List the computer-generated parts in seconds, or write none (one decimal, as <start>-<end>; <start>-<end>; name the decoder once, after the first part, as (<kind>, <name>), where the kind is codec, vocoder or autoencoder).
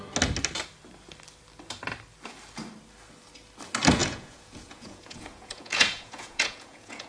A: 4.0-7.1 (vocoder, Vocos)